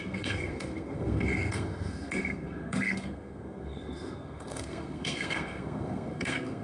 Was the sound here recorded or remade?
remade